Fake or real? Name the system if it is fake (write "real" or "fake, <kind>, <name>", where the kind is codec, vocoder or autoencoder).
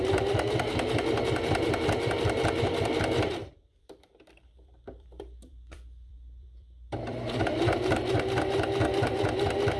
fake, vocoder, BigVGAN v2